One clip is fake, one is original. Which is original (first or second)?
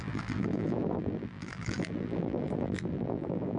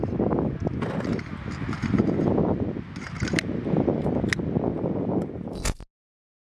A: second